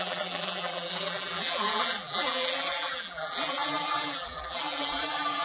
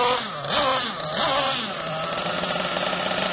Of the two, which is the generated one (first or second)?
first